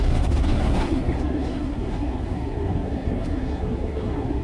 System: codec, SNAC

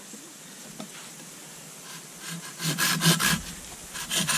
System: none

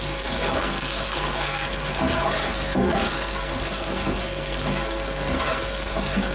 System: codec, SNAC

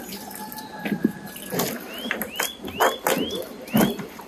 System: none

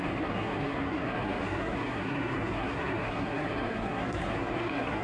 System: codec, SNAC